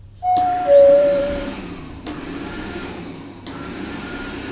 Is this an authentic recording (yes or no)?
no